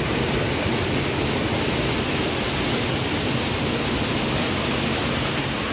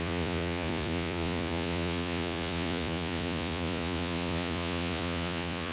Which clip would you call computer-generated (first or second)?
second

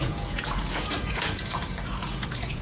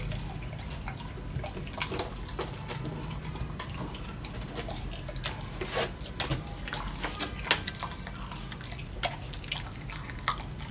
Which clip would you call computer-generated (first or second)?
first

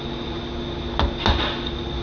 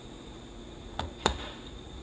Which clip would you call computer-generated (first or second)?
second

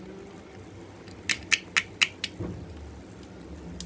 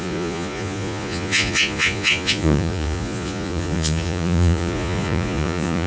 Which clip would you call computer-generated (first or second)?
second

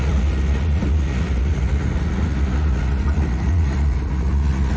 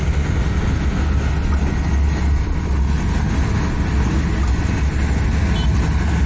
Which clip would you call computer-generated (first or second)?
first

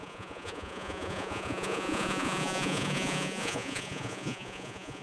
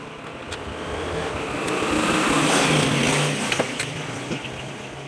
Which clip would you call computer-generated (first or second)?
first